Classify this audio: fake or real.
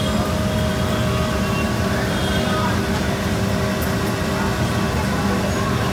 real